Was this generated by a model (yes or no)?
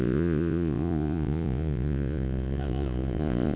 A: yes